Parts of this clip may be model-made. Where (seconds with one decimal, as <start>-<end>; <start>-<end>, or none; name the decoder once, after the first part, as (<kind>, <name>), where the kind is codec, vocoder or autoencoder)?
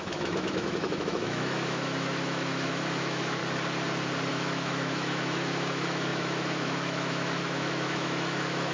0.0-3.4 (autoencoder, DAC-VAE); 4.3-8.7